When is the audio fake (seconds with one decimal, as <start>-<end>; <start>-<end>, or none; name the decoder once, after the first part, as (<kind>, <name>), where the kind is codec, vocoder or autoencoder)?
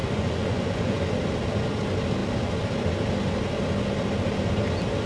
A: 0.0-1.0 (vocoder, Vocos)